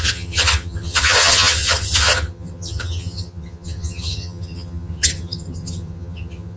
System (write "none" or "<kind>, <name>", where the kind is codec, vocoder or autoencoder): vocoder, HiFi-GAN